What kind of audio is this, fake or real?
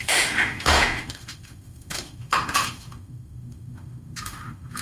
fake